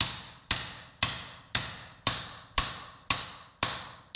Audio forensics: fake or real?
real